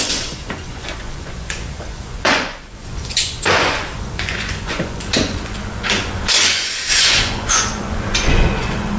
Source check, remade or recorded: remade